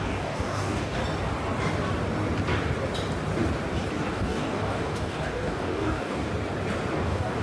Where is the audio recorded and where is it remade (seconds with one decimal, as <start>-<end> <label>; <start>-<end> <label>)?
0.0-1.0 remade; 1.0-4.1 recorded; 4.1-6.3 remade; 6.3-6.9 recorded; 6.9-7.4 remade